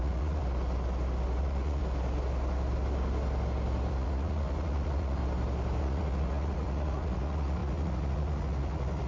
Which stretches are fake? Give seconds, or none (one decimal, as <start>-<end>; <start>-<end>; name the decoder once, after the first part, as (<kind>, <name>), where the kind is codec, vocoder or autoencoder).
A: 0.0-0.4 (vocoder, Vocos); 1.4-1.8; 3.9-5.2; 5.8-9.1